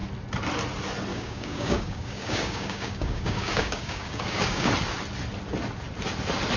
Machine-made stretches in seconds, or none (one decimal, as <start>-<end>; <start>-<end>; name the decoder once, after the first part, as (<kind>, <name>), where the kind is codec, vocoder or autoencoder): 1.1-4.7 (codec, DAC)